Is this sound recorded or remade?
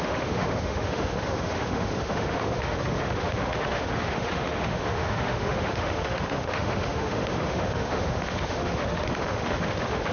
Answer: remade